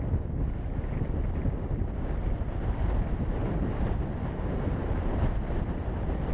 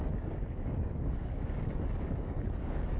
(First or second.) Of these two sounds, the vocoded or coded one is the second